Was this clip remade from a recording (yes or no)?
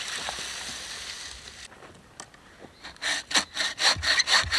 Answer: no